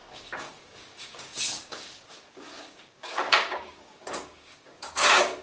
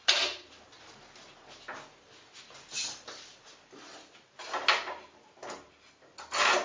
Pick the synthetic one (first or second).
first